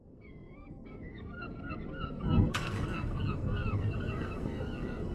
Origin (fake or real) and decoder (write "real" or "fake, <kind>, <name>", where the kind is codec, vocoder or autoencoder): fake, codec, SNAC